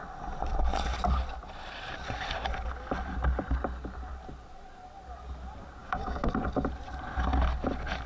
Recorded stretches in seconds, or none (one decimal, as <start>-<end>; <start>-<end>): 0.0-5.8; 6.3-8.1